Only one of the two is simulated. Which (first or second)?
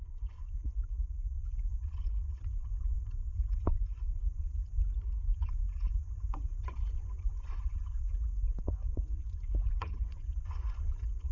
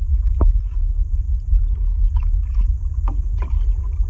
first